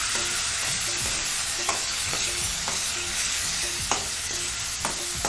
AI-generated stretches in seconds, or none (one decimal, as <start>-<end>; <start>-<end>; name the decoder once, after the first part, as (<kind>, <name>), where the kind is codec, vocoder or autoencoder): 1.3-4.5 (codec, DAC)